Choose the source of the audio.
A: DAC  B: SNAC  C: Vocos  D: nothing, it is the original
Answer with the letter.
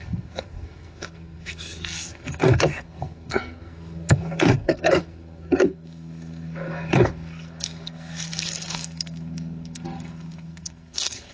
B